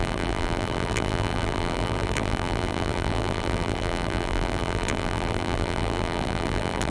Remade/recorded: remade